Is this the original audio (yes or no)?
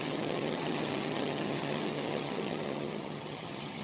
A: no